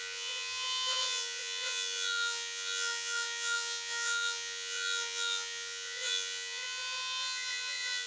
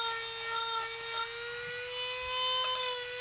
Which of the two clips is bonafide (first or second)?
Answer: second